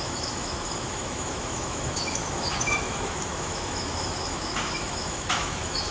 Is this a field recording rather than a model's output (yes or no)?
no